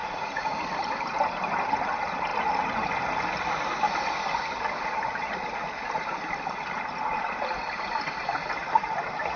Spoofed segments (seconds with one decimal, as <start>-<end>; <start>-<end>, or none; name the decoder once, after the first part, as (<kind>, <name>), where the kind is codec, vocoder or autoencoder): 0.0-0.7 (vocoder, Vocos)